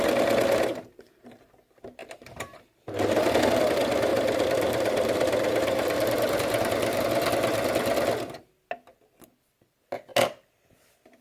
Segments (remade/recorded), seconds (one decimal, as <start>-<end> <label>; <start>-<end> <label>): 0.0-0.7 recorded; 0.7-1.3 remade; 1.3-2.0 recorded; 2.0-2.6 remade; 2.6-4.1 recorded; 4.1-7.0 remade; 7.0-11.2 recorded